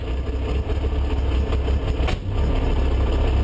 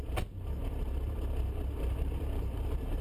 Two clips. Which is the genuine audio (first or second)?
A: first